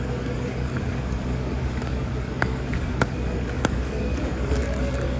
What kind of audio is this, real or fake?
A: fake